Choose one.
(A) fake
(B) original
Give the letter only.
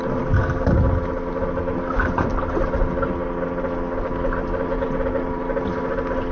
B